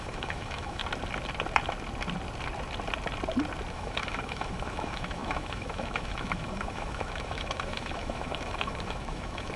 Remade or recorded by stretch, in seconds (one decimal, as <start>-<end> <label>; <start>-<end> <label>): 0.0-0.8 remade; 0.8-3.7 recorded; 3.7-9.6 remade